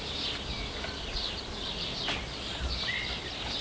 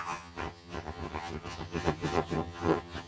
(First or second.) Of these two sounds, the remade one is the second